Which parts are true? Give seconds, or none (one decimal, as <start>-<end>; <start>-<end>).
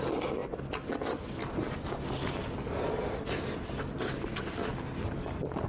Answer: 0.0-5.7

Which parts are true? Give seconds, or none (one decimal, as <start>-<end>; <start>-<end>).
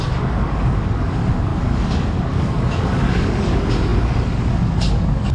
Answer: none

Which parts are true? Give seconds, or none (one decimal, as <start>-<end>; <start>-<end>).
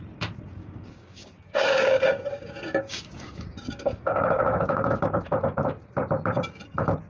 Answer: 0.0-0.6; 4.9-7.1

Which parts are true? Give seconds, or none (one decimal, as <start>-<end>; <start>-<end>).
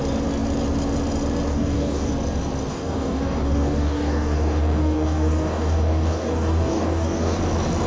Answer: 0.0-1.5; 2.1-2.7; 7.4-7.9